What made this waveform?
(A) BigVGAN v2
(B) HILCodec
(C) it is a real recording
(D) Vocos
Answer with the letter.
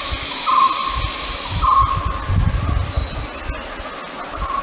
C